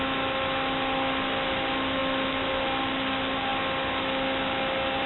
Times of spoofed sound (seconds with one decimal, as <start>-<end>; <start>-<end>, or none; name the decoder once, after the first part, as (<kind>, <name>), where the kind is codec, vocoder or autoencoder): none